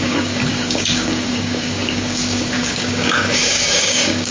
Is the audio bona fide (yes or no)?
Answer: no